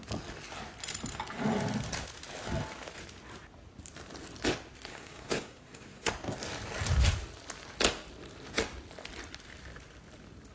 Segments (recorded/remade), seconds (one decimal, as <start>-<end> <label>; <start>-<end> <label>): 0.0-4.9 recorded; 4.9-6.1 remade; 6.1-10.5 recorded